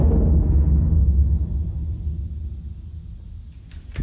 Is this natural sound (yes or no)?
yes